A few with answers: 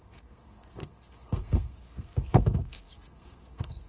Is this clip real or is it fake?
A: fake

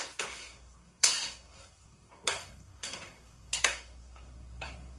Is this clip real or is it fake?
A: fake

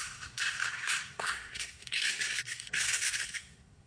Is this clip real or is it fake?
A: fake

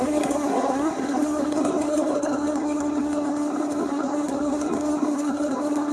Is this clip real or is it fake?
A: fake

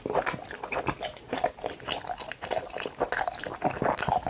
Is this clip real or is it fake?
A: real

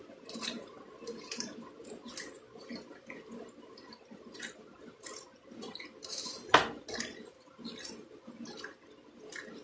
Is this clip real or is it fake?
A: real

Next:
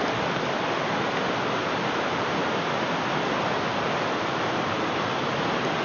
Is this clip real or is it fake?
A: real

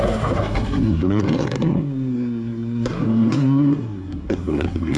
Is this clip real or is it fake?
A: fake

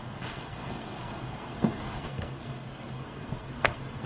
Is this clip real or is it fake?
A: fake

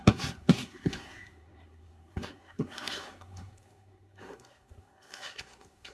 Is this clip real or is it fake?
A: fake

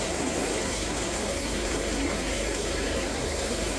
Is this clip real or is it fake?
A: fake